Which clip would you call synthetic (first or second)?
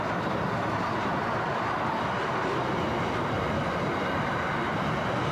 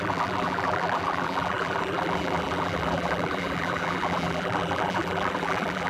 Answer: second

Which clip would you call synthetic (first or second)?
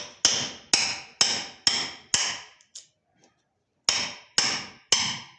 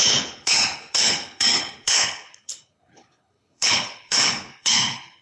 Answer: second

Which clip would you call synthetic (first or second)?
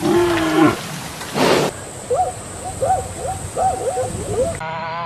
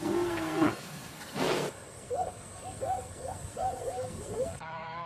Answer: second